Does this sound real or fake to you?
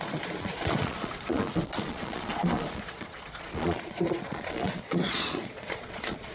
fake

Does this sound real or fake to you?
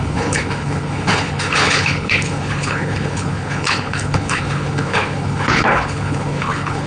fake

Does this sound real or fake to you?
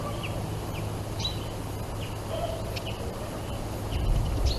real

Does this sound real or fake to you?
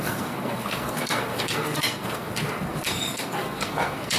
fake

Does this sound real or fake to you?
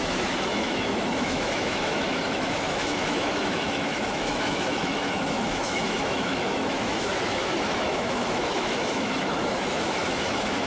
fake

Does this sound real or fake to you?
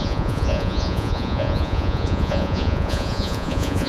fake